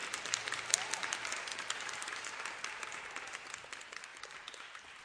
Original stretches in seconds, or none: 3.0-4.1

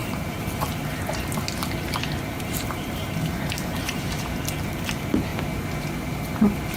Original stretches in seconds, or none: 1.0-1.6; 4.1-6.8

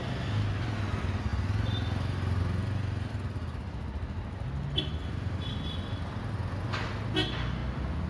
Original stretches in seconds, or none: 0.0-8.1

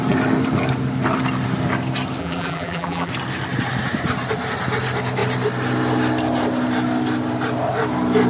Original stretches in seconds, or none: 0.0-2.2; 3.1-8.3

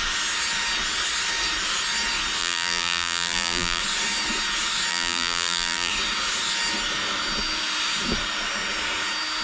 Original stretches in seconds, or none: 0.0-2.4; 3.8-4.9; 5.9-9.4

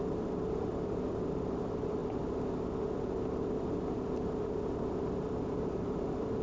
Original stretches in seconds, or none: 2.0-4.0